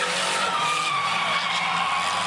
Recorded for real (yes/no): yes